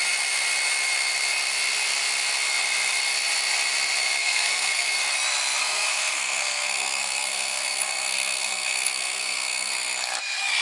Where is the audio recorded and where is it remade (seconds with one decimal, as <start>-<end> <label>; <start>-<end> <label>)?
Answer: 0.0-4.2 recorded; 4.2-4.9 remade; 4.9-5.6 recorded; 5.6-9.7 remade; 9.7-10.6 recorded